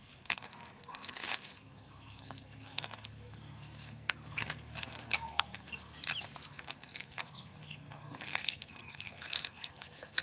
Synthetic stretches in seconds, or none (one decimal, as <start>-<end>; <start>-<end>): 0.0-5.9; 6.5-10.2